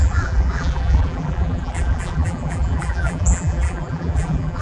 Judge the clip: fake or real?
fake